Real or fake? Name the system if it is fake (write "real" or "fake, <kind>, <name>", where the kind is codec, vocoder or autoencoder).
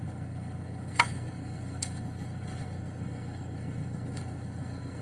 fake, codec, SNAC